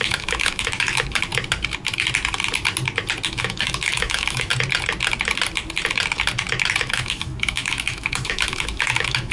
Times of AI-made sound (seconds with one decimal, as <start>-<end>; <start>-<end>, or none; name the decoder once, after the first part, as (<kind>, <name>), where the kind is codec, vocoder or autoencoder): 0.0-1.3 (autoencoder, DAC-VAE); 3.3-4.5; 6.8-9.3

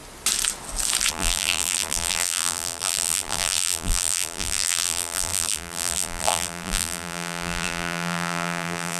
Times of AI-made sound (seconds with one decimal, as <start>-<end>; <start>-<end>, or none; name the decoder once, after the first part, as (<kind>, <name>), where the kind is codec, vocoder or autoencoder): 1.1-9.0 (vocoder, BigVGAN v2)

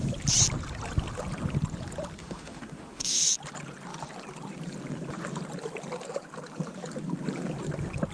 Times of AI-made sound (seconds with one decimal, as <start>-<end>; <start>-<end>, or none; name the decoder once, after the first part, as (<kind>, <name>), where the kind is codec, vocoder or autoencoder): 2.2-3.3 (autoencoder, DAC-VAE)